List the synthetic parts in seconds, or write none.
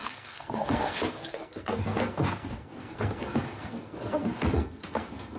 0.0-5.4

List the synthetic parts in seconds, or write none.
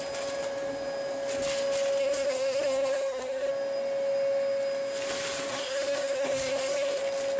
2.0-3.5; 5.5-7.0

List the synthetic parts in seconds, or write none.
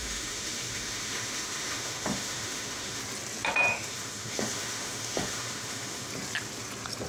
0.0-3.0; 3.7-6.1